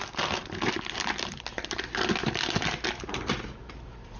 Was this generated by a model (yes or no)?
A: no